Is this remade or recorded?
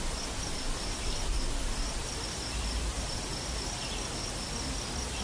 recorded